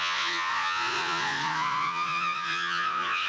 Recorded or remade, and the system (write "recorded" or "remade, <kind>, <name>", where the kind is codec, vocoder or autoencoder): remade, vocoder, Vocos